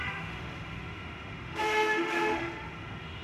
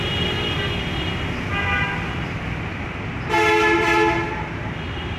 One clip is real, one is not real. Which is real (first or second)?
second